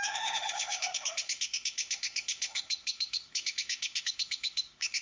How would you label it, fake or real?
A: fake